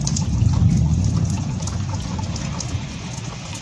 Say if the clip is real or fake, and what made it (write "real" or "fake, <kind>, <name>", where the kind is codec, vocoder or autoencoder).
fake, vocoder, Vocos